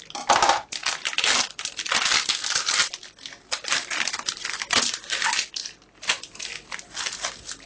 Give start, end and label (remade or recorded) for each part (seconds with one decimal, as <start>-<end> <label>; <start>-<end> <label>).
0.0-7.7 recorded